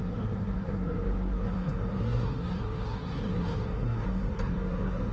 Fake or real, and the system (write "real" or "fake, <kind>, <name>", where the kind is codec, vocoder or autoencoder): fake, codec, SNAC